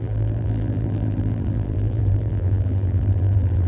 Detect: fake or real fake